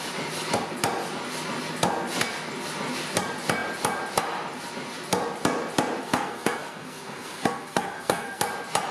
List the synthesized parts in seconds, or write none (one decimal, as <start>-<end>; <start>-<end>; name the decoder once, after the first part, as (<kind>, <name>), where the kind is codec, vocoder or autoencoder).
6.0-8.4 (codec, SNAC)